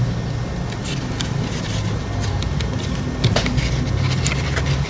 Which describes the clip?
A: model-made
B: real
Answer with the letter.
B